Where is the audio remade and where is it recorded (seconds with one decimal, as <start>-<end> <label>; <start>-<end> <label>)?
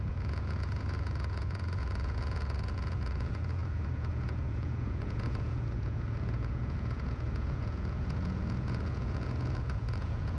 0.0-10.4 remade